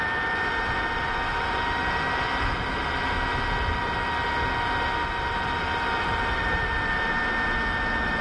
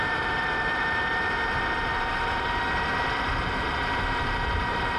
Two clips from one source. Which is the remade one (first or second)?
second